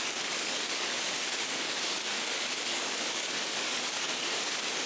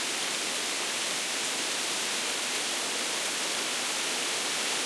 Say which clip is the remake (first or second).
first